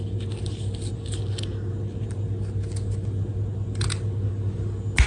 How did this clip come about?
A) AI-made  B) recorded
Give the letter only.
B